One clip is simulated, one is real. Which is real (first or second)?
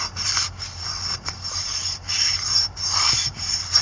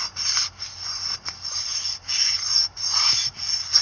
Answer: second